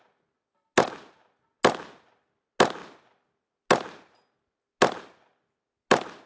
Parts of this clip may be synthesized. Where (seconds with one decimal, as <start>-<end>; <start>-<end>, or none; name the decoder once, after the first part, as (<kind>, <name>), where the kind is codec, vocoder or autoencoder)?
none